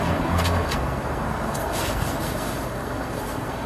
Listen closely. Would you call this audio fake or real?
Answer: fake